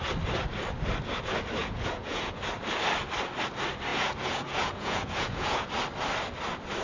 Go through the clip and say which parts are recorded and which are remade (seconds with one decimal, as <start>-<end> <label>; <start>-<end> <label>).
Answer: 0.0-1.6 recorded; 1.6-2.4 remade; 2.4-3.9 recorded; 3.9-5.7 remade; 5.7-6.8 recorded